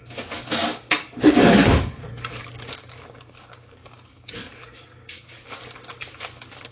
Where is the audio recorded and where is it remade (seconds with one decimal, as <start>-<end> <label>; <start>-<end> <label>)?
0.0-6.7 remade